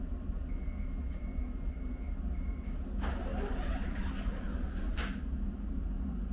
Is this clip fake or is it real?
real